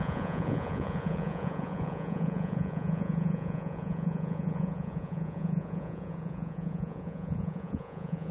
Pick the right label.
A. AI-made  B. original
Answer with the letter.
A